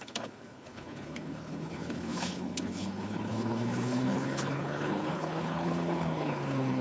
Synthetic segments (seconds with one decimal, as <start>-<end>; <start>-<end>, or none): 0.0-6.8